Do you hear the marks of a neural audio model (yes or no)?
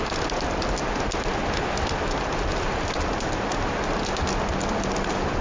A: no